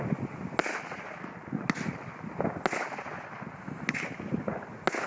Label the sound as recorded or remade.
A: recorded